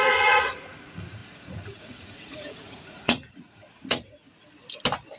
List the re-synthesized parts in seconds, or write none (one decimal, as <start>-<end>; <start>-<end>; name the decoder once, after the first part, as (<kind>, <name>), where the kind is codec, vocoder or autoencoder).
0.0-4.3 (vocoder, Vocos)